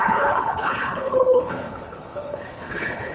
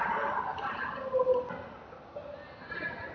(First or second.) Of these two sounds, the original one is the second